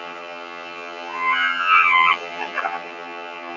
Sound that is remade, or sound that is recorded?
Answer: remade